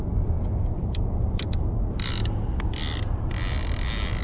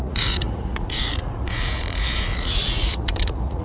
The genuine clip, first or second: first